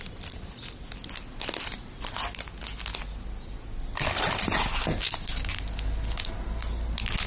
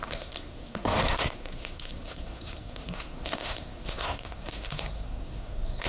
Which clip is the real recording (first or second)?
first